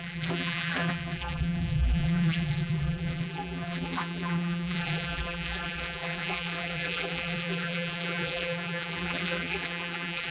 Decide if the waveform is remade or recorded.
remade